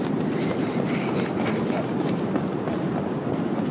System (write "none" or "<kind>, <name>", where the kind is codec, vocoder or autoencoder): none